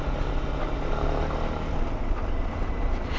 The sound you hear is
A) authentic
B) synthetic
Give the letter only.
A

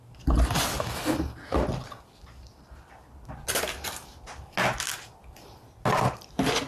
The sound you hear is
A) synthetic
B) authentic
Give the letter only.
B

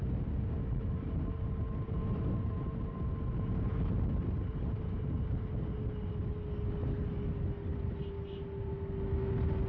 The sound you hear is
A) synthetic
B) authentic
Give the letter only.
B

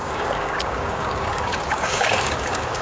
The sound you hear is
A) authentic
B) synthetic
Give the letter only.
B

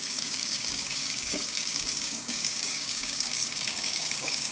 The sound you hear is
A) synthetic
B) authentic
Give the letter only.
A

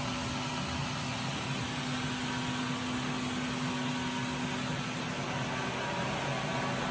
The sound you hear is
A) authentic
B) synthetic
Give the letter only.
A